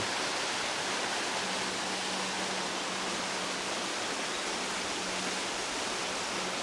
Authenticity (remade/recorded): recorded